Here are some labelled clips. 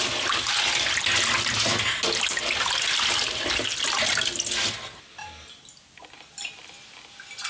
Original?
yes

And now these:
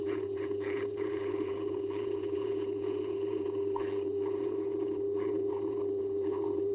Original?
no